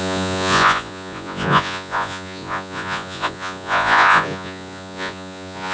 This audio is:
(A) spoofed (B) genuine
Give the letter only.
A